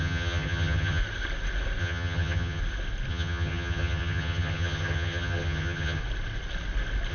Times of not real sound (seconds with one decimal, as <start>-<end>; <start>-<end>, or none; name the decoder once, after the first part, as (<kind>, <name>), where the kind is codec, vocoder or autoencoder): 0.0-1.0 (vocoder, HiFi-GAN); 1.8-2.6; 3.1-6.0